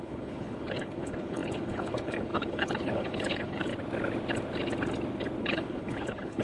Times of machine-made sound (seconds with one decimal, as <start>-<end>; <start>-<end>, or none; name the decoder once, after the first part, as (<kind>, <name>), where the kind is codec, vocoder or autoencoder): 0.0-3.7 (codec, HILCodec); 5.4-6.4